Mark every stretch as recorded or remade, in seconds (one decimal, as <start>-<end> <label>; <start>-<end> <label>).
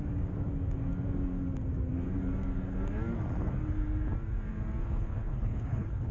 0.0-4.8 recorded; 4.8-6.1 remade